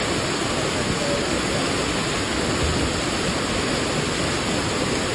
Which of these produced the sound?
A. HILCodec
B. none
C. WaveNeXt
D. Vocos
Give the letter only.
B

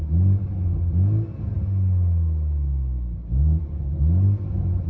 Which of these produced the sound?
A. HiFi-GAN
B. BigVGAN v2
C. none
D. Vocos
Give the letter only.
C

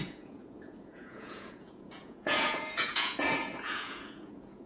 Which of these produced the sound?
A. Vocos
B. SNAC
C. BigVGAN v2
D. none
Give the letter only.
A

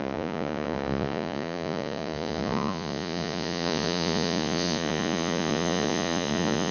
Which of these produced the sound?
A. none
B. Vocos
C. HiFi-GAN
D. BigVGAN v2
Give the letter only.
B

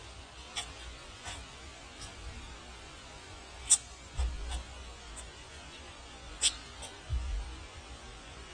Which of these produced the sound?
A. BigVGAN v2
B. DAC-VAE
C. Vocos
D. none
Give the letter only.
C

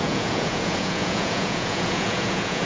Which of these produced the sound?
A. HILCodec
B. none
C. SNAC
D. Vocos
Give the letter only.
D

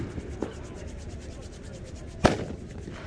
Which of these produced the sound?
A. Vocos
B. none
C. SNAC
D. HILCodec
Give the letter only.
B